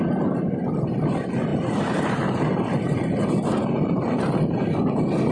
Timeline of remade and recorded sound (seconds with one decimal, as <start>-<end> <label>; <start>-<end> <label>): 0.0-1.5 recorded; 1.5-4.6 remade; 4.6-5.3 recorded